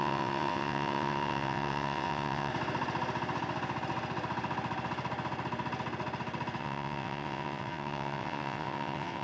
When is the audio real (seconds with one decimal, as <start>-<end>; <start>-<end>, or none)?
2.5-6.6